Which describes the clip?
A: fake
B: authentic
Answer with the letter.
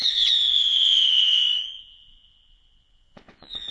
A